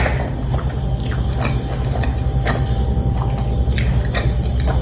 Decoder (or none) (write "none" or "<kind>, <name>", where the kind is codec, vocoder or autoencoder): none